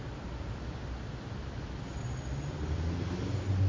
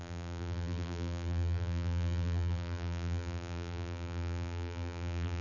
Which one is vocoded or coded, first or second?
second